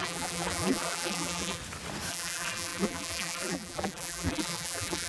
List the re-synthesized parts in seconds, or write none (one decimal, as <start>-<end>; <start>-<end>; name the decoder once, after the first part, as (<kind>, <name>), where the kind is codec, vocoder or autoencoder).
0.0-1.6 (vocoder, BigVGAN v2); 2.1-5.1